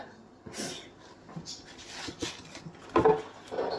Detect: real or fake real